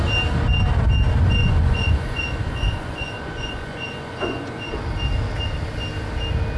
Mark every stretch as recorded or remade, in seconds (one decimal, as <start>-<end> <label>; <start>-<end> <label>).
0.0-1.4 recorded; 1.4-4.7 remade; 4.7-6.6 recorded